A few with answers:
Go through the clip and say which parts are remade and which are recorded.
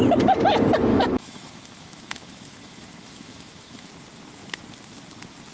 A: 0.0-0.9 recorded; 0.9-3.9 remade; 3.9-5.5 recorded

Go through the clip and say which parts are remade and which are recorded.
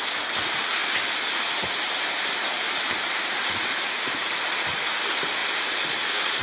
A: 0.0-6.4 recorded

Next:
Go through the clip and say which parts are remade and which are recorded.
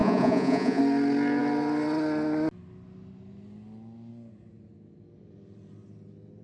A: 0.0-0.8 remade; 0.8-6.4 recorded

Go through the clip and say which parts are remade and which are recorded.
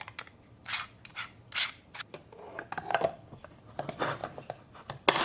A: 0.0-2.9 recorded; 2.9-3.6 remade; 3.6-5.2 recorded